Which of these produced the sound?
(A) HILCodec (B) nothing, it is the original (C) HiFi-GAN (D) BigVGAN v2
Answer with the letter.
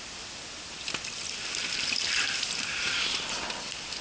B